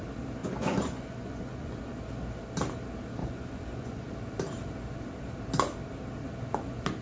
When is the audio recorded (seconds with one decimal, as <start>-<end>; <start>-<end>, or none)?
0.0-0.4; 1.7-3.2; 4.1-7.0